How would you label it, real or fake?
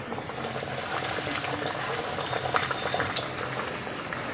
fake